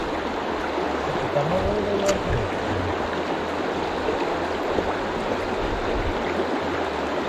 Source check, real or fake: real